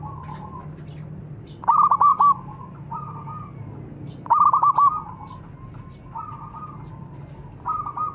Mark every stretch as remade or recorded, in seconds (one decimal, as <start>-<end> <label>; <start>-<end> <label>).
0.0-8.1 recorded